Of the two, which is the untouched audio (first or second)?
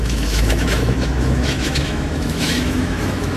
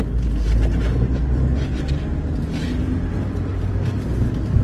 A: second